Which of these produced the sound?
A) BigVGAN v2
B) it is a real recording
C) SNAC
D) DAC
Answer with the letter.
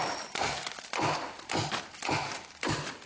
B